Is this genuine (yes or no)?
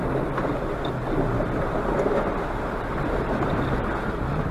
yes